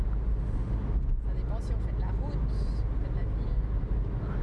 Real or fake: real